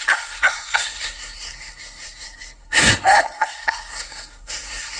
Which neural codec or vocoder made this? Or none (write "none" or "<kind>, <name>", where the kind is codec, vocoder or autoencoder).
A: codec, SNAC